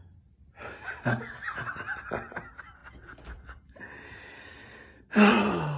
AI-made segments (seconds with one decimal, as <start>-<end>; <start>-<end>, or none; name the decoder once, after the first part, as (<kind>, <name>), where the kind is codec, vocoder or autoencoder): none

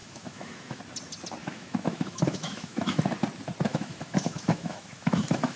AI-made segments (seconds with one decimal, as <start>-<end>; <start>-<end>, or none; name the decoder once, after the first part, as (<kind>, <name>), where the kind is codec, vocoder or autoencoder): 0.0-0.8 (autoencoder, DAC-VAE); 1.4-3.0; 3.7-5.6

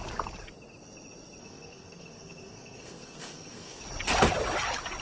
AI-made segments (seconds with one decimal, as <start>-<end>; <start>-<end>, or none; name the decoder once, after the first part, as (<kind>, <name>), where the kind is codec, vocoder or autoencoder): 1.4-3.8 (codec, SNAC)

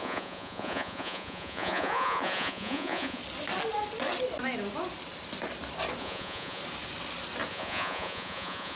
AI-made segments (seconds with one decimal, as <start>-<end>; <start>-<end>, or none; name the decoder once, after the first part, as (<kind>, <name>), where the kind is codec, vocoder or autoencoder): 0.0-3.2 (vocoder, Vocos); 6.0-6.6; 7.5-8.8

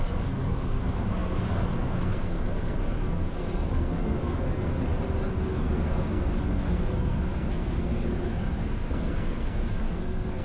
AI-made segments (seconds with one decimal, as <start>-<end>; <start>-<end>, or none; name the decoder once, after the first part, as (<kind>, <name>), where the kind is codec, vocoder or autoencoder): 0.0-4.8 (codec, SNAC); 5.3-10.4

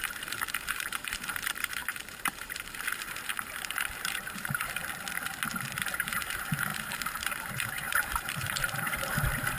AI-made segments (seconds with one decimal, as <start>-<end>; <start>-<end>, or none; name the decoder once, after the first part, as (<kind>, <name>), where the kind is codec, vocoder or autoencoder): 0.0-4.8 (vocoder, BigVGAN v2); 5.9-9.6

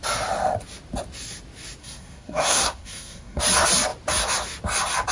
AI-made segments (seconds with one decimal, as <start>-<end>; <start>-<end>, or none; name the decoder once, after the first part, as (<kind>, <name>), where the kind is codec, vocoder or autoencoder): 1.8-3.4 (codec, SNAC)